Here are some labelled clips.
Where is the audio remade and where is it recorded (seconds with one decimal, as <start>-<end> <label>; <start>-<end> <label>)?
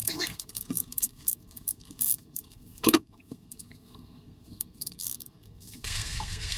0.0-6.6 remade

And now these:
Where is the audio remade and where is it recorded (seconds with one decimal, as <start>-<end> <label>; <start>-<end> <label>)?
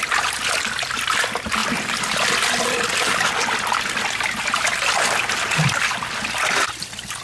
0.0-7.2 recorded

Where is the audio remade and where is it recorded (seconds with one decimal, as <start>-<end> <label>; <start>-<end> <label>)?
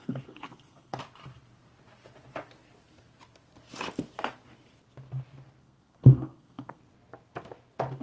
0.0-1.0 remade; 1.0-5.6 recorded; 5.6-6.8 remade; 6.8-8.0 recorded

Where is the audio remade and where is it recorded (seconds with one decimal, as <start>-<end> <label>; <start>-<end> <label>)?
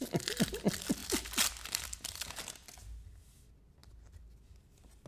0.0-5.1 recorded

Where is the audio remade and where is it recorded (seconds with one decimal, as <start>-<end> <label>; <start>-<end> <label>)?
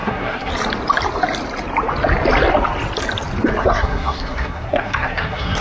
0.0-0.5 remade; 0.5-3.6 recorded; 3.6-5.6 remade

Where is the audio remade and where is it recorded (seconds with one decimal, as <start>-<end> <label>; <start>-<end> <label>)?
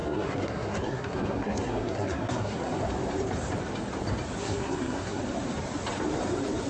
0.0-2.8 remade; 2.8-4.4 recorded; 4.4-5.2 remade; 5.2-6.7 recorded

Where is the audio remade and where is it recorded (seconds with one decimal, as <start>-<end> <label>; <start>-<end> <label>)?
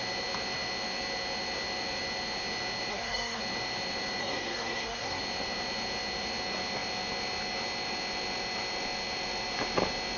0.0-2.9 recorded; 2.9-3.4 remade; 3.4-4.2 recorded; 4.2-5.2 remade; 5.2-10.2 recorded